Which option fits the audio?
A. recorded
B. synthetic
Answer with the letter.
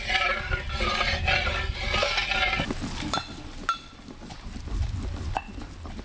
A